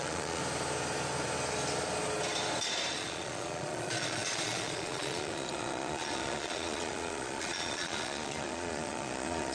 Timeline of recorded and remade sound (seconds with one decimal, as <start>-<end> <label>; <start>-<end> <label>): 0.0-0.4 remade; 0.4-2.9 recorded; 2.9-9.5 remade